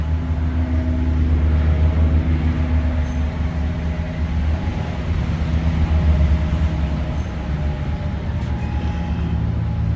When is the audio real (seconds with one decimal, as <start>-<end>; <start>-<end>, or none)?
0.0-10.0